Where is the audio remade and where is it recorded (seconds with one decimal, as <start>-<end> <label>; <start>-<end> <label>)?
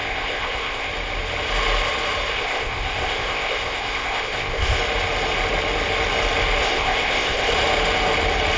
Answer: 0.0-0.9 remade; 0.9-2.3 recorded; 2.3-4.8 remade; 4.8-6.6 recorded; 6.6-7.5 remade; 7.5-8.6 recorded